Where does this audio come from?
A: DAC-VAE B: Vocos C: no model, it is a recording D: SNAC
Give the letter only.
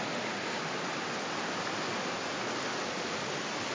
C